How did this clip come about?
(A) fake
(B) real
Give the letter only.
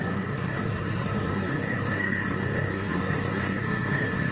A